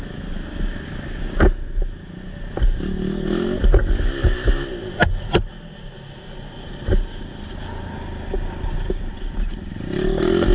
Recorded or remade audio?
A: recorded